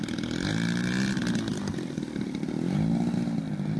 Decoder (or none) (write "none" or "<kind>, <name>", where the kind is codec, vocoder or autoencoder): none